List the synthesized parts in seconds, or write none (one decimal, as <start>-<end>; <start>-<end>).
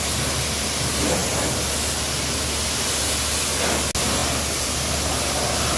none